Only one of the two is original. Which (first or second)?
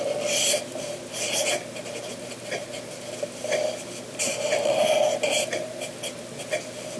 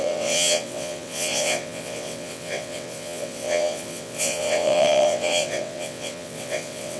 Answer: first